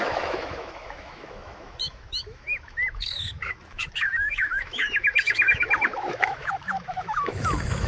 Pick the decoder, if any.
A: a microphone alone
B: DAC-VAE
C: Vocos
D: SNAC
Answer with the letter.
B